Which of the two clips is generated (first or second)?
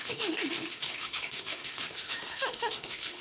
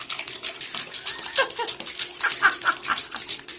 first